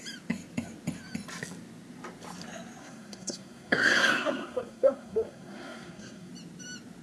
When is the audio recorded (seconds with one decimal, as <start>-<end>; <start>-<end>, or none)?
0.0-2.8; 6.3-7.0